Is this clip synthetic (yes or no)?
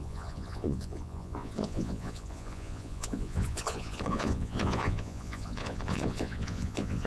yes